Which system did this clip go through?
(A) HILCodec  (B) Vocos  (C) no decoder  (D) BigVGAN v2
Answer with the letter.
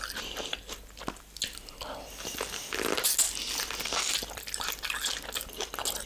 C